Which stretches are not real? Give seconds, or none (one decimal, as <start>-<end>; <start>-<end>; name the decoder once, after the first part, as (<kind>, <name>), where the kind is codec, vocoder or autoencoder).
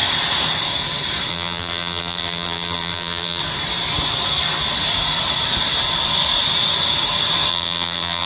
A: 1.3-3.4 (vocoder, BigVGAN v2); 7.5-8.3